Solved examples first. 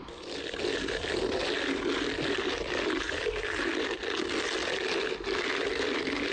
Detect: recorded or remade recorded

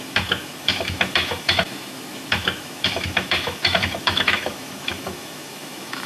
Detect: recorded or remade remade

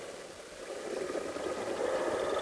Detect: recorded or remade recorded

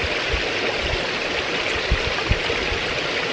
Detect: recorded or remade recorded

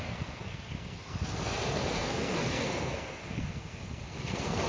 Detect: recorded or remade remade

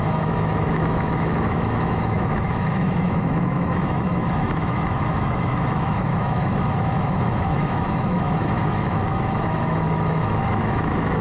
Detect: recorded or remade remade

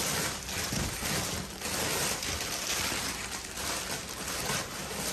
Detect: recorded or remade recorded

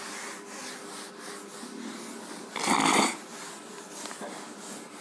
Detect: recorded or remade recorded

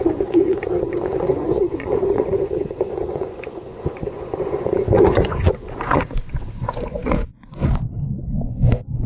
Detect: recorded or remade remade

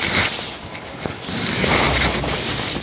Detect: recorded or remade recorded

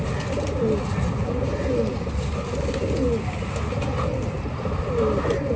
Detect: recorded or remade recorded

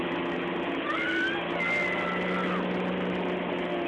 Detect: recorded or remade recorded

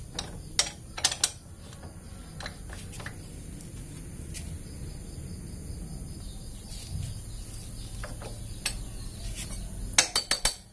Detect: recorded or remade recorded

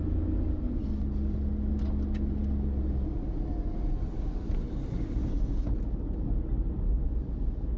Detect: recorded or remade recorded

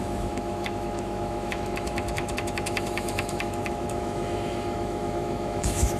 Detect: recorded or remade remade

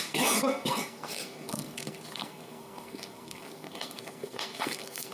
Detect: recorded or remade remade